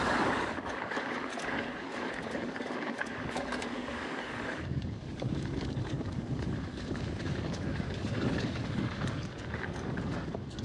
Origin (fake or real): fake